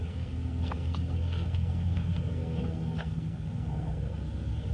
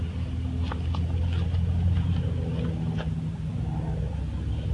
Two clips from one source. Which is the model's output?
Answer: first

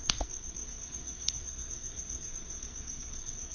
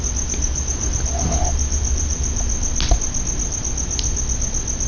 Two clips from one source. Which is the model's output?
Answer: first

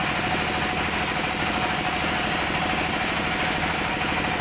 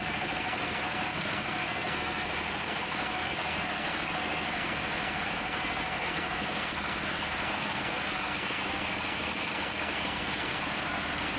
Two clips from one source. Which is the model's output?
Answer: second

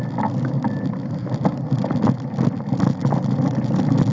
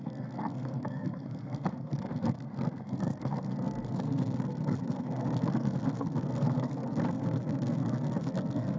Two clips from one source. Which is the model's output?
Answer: second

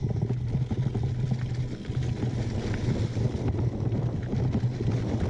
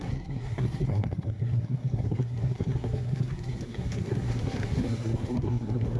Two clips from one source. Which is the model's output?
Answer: second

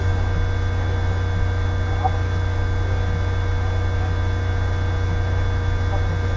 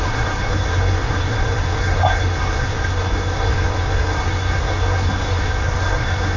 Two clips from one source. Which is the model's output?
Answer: second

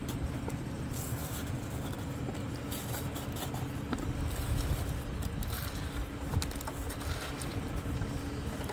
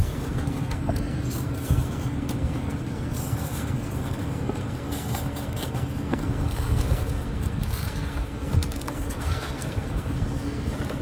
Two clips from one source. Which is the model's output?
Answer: second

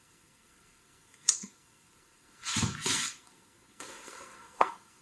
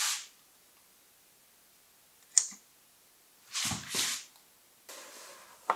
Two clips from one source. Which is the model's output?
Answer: first